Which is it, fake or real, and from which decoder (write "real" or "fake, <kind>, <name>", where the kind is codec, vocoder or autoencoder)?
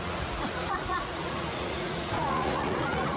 fake, vocoder, Vocos